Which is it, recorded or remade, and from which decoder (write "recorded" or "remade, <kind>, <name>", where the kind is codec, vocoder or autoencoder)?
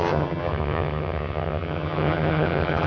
remade, vocoder, HiFi-GAN